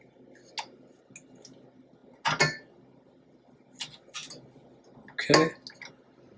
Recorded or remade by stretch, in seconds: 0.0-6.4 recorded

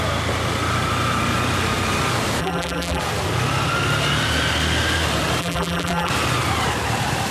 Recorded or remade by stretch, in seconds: 0.0-2.4 recorded; 2.4-3.0 remade; 3.0-5.4 recorded; 5.4-6.1 remade; 6.1-7.3 recorded

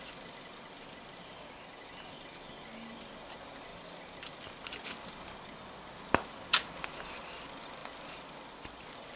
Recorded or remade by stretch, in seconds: 0.0-9.2 recorded

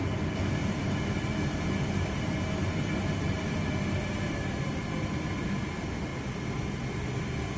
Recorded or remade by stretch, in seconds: 0.0-6.1 recorded; 6.1-6.8 remade; 6.8-7.6 recorded

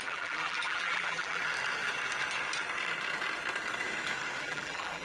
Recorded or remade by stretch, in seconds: 0.0-1.4 remade; 1.4-4.4 recorded; 4.4-5.0 remade

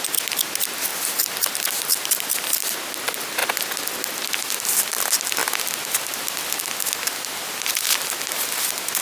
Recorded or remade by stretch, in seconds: 0.0-0.9 recorded; 0.9-2.8 remade; 2.8-9.0 recorded